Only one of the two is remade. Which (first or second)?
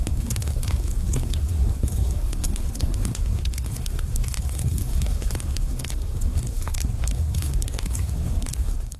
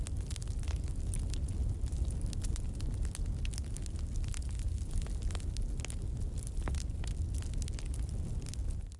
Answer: first